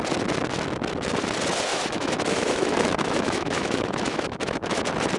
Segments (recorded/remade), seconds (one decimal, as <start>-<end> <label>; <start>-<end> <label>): 0.0-1.7 recorded; 1.7-4.8 remade; 4.8-5.2 recorded